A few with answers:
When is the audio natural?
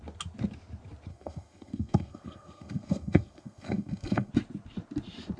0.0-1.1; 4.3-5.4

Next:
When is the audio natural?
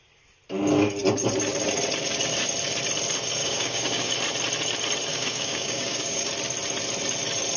0.0-3.4; 4.1-5.1; 6.3-7.6